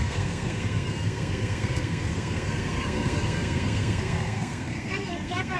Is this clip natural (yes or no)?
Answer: no